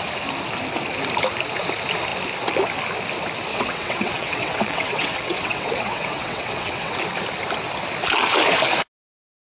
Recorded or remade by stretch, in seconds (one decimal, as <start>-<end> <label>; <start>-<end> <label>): 0.0-3.5 recorded; 3.5-7.0 remade; 7.0-9.4 recorded